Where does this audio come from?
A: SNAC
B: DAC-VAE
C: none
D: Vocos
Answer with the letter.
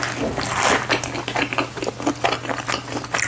C